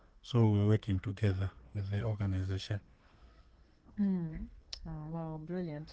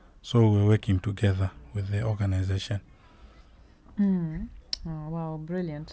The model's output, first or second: first